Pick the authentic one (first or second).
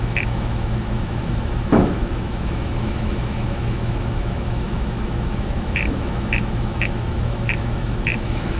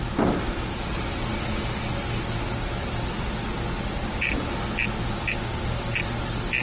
second